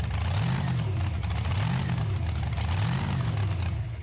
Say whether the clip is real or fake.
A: real